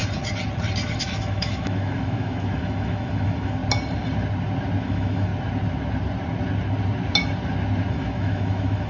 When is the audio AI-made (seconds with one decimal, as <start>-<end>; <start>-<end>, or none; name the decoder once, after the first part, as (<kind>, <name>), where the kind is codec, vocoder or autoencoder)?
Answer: 1.0-3.6 (autoencoder, DAC-VAE); 4.8-5.3; 7.9-8.9